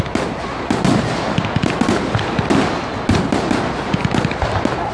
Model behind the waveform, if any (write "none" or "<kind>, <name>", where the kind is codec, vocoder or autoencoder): none